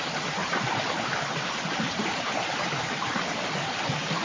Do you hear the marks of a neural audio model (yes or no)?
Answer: no